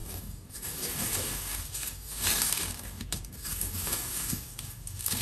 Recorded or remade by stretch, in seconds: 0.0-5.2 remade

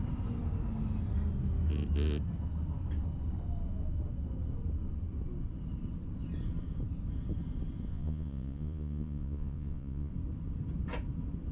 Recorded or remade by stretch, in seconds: 0.0-7.9 recorded; 7.9-10.1 remade; 10.1-11.5 recorded

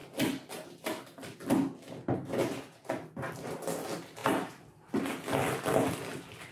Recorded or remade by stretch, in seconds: 0.0-4.2 recorded; 4.2-4.9 remade; 4.9-6.5 recorded

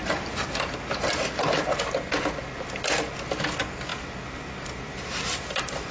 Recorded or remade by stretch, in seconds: 0.0-5.9 recorded

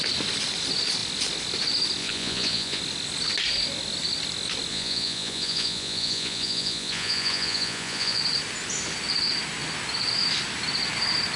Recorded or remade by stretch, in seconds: 0.0-2.0 recorded; 2.0-2.8 remade; 2.8-4.7 recorded; 4.7-8.2 remade; 8.2-11.4 recorded

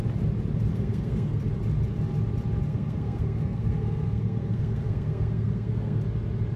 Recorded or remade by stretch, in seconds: 0.0-0.7 recorded; 0.7-1.4 remade; 1.4-2.7 recorded; 2.7-6.0 remade; 6.0-6.6 recorded

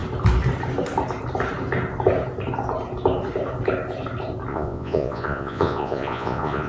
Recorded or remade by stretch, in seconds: 0.0-4.5 recorded; 4.5-6.7 remade

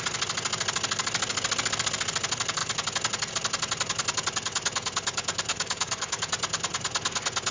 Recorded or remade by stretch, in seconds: 0.0-5.5 recorded; 5.5-6.2 remade; 6.2-7.5 recorded